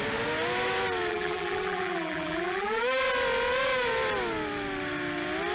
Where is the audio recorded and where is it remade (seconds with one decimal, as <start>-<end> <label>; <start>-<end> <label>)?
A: 0.0-1.1 recorded; 1.1-2.8 remade; 2.8-5.5 recorded